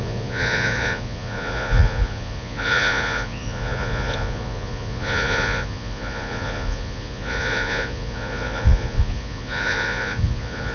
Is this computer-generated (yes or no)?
yes